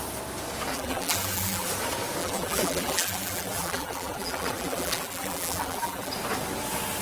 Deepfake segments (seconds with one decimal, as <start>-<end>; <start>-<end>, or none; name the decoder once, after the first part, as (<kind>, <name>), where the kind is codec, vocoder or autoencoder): 0.7-1.7 (vocoder, BigVGAN v2); 2.2-6.1